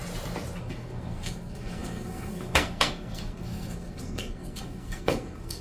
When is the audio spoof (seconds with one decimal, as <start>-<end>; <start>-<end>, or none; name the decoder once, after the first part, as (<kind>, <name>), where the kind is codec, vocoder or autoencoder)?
0.6-5.6 (codec, SNAC)